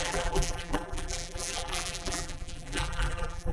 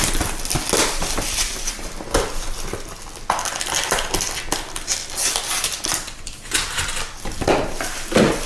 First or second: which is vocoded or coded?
first